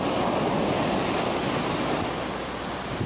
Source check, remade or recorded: recorded